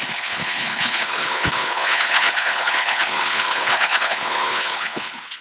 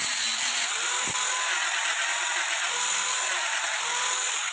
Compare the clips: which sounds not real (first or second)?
first